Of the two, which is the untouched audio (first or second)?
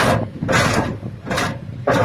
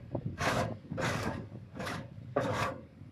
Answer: first